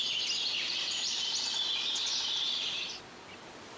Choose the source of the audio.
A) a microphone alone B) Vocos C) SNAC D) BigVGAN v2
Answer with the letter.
A